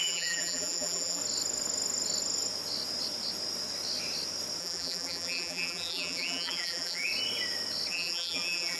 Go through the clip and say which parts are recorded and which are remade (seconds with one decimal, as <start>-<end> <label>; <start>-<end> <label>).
0.0-1.2 remade; 1.2-4.6 recorded; 4.6-7.1 remade; 7.1-7.9 recorded; 7.9-8.8 remade